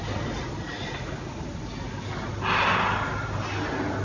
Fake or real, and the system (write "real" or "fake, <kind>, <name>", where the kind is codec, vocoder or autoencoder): real